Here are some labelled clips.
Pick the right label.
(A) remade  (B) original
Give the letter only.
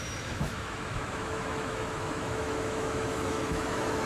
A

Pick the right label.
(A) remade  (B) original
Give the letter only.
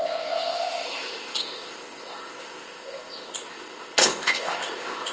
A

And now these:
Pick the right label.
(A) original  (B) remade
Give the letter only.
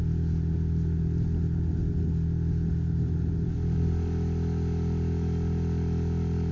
A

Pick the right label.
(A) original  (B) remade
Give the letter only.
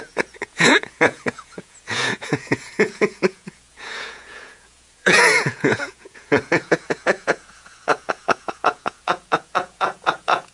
B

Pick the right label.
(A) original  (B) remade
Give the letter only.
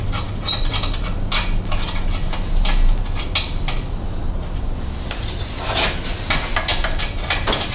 A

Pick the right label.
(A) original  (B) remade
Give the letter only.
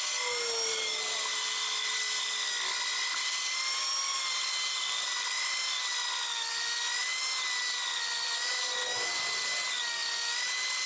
A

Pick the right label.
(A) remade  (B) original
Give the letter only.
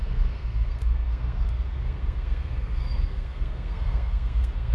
A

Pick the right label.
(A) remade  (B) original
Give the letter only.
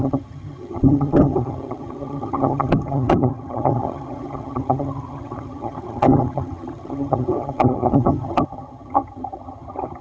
A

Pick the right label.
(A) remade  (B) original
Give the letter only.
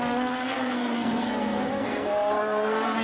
A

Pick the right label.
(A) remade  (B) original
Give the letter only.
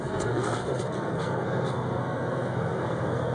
A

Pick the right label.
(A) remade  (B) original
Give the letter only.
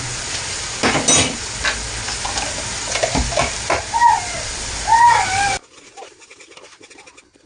B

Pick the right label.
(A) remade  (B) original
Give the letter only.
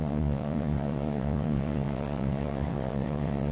A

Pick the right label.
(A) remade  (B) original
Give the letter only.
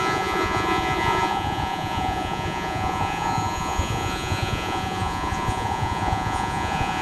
A